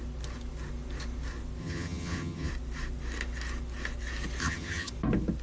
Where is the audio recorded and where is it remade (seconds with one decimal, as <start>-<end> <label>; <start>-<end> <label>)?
0.0-1.6 recorded; 1.6-2.5 remade; 2.5-4.4 recorded; 4.4-4.9 remade; 4.9-5.4 recorded